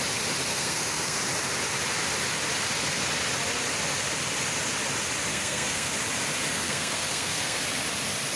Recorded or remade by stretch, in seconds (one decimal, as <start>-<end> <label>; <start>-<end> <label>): 0.0-0.5 recorded; 0.5-1.2 remade; 1.2-5.3 recorded; 5.3-5.9 remade; 5.9-6.5 recorded; 6.5-7.6 remade; 7.6-8.4 recorded